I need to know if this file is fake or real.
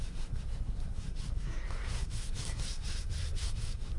fake